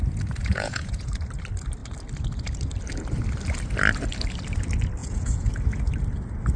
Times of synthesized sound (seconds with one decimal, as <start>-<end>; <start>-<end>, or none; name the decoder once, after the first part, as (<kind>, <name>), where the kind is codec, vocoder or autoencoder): 0.4-1.1 (vocoder, Vocos); 5.0-5.5